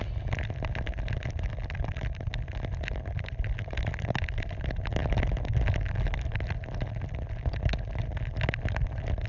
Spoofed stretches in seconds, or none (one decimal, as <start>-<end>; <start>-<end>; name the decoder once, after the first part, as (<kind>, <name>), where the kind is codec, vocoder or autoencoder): none